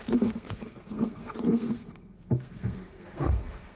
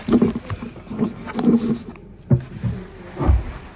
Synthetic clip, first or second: first